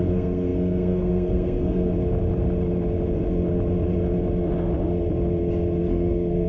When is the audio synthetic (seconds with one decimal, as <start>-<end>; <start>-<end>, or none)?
0.0-1.9; 5.8-6.5